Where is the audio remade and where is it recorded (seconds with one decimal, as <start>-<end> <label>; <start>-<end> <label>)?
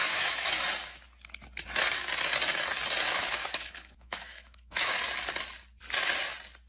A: 0.0-0.6 remade; 0.6-3.1 recorded; 3.1-5.0 remade; 5.0-6.7 recorded